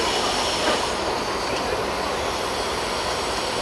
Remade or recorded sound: recorded